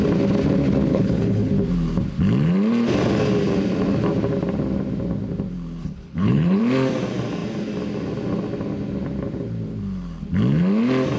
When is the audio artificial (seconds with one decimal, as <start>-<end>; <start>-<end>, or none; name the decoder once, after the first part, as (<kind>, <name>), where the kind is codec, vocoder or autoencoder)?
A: 0.9-1.5 (codec, HILCodec); 5.8-6.6